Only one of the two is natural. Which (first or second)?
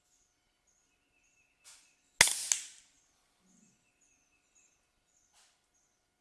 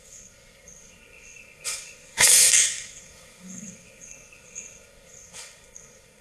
first